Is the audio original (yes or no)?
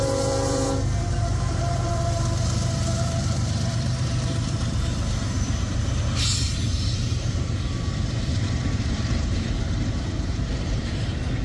no